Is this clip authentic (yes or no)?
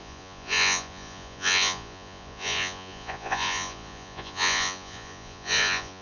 no